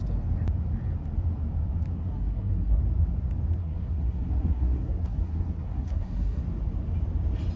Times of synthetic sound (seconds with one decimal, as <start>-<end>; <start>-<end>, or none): 1.9-2.8; 3.6-6.4